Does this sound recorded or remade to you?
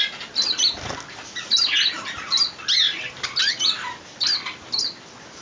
recorded